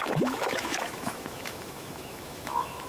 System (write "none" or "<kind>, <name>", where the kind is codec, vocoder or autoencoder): autoencoder, DAC-VAE